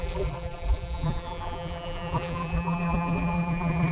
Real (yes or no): no